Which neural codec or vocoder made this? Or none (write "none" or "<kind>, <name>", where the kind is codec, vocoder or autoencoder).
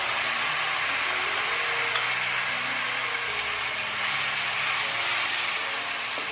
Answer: none